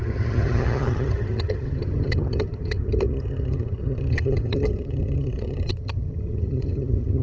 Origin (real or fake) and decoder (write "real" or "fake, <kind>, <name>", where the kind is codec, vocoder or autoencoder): fake, vocoder, HiFi-GAN